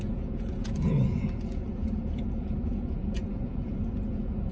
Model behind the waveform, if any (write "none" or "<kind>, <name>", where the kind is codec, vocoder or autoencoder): vocoder, Vocos